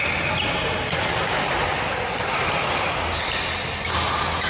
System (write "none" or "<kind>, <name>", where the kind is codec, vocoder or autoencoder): none